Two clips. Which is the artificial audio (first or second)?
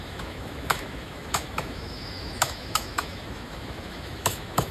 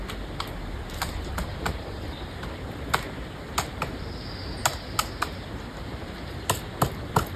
first